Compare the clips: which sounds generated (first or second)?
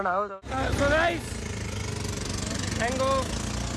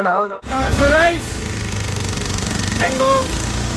second